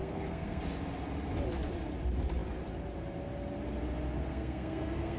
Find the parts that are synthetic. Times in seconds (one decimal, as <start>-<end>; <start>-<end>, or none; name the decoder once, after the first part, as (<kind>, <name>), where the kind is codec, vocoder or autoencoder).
0.0-0.6 (codec, SNAC); 4.3-5.2